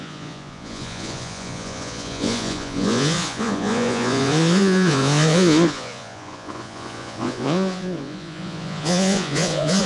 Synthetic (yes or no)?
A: yes